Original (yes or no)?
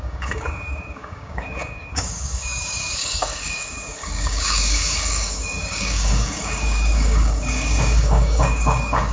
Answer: no